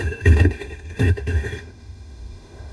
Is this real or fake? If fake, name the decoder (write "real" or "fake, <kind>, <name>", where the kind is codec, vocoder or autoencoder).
fake, autoencoder, DAC-VAE